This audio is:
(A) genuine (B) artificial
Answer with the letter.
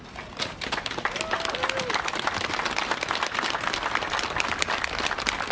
A